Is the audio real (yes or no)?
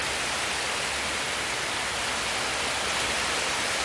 yes